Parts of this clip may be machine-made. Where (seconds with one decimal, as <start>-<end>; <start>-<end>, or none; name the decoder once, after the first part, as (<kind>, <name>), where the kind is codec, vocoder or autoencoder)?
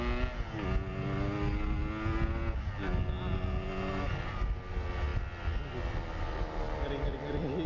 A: none